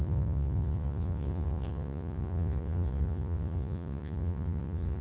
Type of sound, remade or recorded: remade